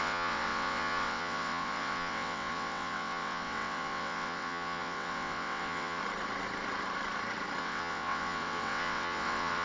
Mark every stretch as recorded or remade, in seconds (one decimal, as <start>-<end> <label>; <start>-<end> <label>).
0.0-6.0 remade; 6.0-7.6 recorded; 7.6-9.6 remade